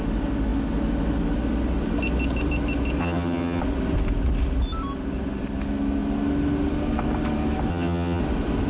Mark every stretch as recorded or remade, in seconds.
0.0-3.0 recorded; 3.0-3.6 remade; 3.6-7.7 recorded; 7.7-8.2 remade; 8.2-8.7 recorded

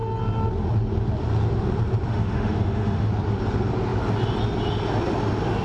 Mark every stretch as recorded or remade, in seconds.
0.0-2.1 recorded; 2.1-3.1 remade; 3.1-5.6 recorded

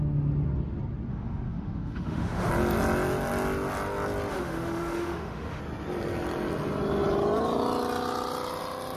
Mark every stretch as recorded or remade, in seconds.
0.0-1.1 recorded; 1.1-2.5 remade; 2.5-4.3 recorded; 4.3-5.6 remade; 5.6-9.0 recorded

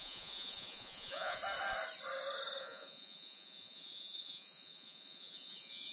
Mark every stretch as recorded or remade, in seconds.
0.0-1.4 remade; 1.4-2.6 recorded; 2.6-5.9 remade

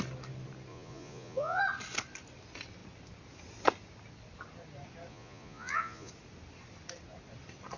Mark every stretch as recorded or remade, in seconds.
0.0-0.7 recorded; 0.7-1.6 remade; 1.6-5.1 recorded; 5.1-6.1 remade; 6.1-7.8 recorded

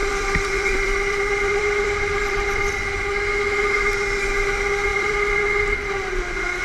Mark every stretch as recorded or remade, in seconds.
0.0-2.7 remade; 2.7-4.9 recorded; 4.9-5.4 remade; 5.4-6.6 recorded